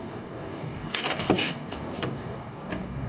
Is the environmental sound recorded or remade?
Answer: remade